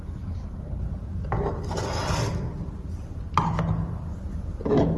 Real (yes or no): yes